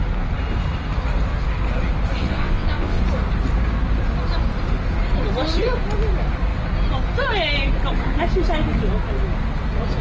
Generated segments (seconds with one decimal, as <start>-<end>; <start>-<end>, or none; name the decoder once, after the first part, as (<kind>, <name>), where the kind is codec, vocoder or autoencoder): 2.2-3.0 (vocoder, WaveNeXt)

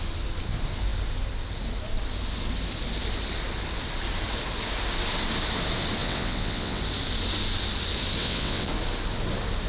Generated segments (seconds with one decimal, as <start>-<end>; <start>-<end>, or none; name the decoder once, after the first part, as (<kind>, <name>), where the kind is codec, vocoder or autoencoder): 6.0-6.8 (vocoder, WaveNeXt); 8.2-8.7

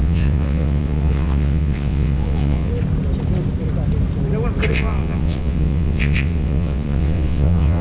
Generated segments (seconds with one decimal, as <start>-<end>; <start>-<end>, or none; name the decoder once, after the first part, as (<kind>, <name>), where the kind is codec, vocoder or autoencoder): 0.0-2.7 (vocoder, WaveNeXt); 4.7-7.8

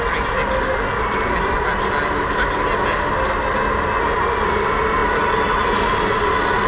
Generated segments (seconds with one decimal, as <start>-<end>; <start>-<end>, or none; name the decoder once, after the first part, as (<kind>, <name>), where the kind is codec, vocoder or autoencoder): none

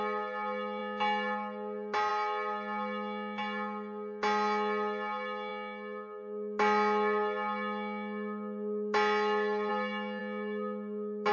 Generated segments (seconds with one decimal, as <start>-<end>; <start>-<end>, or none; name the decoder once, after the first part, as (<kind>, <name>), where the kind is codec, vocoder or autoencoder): none

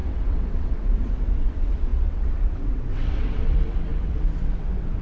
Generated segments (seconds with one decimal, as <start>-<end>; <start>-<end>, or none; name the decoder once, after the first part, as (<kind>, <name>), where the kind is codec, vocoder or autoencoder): 0.0-5.0 (vocoder, WaveNeXt)

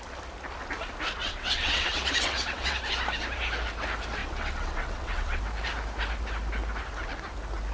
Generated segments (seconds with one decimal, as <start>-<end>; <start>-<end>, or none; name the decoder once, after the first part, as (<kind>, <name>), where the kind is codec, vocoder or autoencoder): 1.2-2.8 (vocoder, WaveNeXt); 4.2-5.4

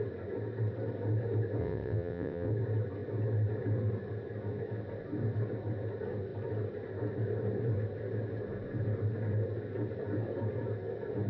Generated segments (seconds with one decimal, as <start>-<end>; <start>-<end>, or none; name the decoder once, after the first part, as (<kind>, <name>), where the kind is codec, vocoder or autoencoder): 1.6-2.5 (vocoder, WaveNeXt)